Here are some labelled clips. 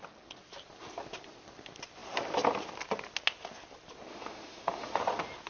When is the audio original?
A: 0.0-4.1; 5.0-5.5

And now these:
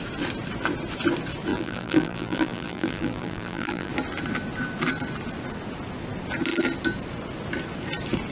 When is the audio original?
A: 0.0-1.5; 3.9-8.3

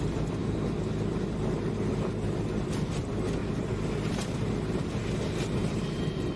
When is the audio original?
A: 0.0-3.4; 3.9-6.4

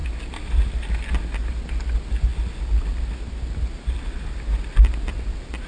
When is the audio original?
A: 0.0-5.7

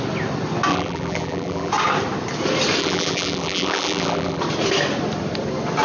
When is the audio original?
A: 0.0-0.7; 1.7-2.8; 4.4-5.8

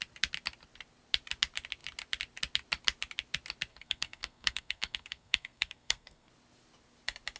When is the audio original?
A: 0.0-3.7; 6.3-7.4